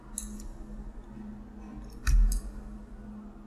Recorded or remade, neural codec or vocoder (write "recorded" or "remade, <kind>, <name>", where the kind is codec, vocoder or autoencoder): recorded